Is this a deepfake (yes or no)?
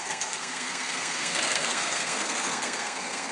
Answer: yes